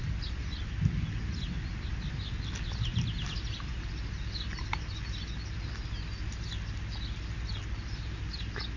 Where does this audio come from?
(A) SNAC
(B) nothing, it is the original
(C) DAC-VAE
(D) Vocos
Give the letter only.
B